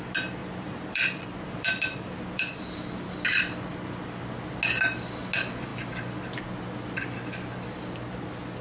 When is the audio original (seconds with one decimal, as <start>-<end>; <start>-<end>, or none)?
0.0-0.4; 2.4-8.6